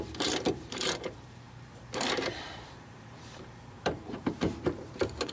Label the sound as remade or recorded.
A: remade